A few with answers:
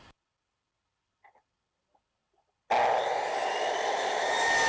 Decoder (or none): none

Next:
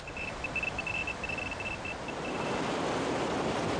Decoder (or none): none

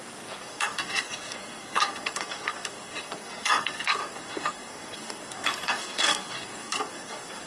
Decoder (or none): codec, SNAC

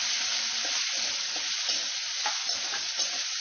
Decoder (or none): none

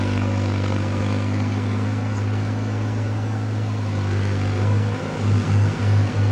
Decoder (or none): codec, SNAC